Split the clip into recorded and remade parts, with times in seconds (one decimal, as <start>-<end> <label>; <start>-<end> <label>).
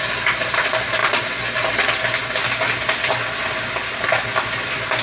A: 0.0-5.0 recorded